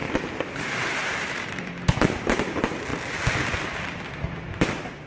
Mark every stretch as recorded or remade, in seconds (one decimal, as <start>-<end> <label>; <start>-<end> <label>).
0.0-1.7 remade; 1.7-5.1 recorded